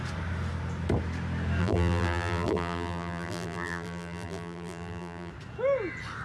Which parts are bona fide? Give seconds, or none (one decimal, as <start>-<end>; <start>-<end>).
0.0-1.6; 5.3-6.2